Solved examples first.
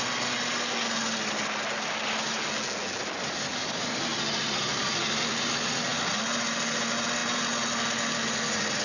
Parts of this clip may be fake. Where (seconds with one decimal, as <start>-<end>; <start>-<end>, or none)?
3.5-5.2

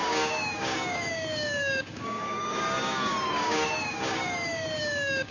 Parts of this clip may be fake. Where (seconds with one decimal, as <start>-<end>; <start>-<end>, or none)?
0.0-5.3

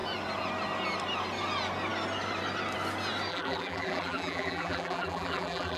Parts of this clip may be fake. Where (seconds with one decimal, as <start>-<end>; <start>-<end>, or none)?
3.3-5.8

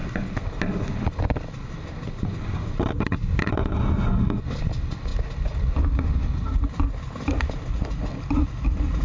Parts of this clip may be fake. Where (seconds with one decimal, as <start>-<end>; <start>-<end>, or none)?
none